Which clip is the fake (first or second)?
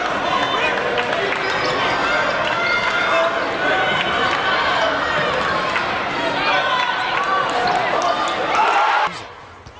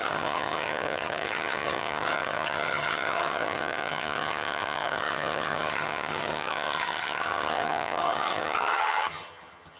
second